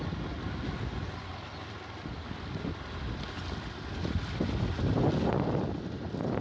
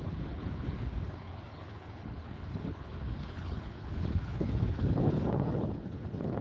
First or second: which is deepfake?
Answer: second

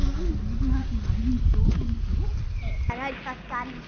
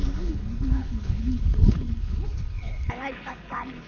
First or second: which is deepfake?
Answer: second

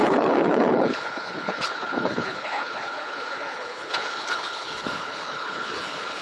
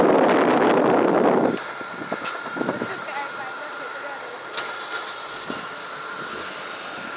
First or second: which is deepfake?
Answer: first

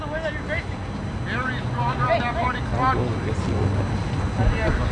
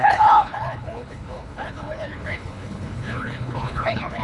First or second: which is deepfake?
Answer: second